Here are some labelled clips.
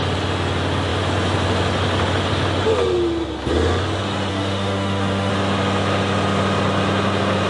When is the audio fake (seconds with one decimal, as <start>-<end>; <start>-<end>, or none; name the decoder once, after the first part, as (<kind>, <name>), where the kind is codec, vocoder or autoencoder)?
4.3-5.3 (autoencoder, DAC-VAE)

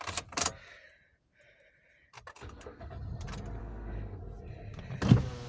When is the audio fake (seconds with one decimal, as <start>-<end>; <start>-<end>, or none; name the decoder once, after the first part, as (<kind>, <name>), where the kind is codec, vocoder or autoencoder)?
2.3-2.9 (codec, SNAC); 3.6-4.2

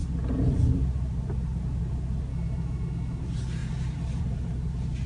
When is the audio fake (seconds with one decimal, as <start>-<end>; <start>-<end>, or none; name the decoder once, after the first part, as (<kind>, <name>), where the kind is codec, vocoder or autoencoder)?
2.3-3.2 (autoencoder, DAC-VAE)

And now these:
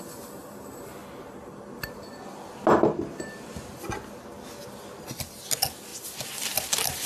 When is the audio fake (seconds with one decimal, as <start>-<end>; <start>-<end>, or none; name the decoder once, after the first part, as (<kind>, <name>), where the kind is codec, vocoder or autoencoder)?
1.0-5.3 (vocoder, BigVGAN v2); 5.9-7.1

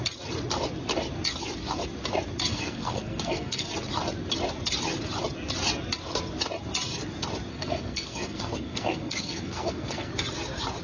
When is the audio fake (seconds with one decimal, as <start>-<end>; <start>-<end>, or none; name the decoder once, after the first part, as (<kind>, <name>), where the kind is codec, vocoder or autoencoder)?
2.5-3.7 (codec, SNAC); 7.5-10.1